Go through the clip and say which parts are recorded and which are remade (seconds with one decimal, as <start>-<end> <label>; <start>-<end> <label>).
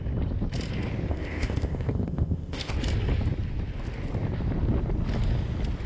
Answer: 0.0-1.1 recorded; 1.1-2.7 remade; 2.7-5.9 recorded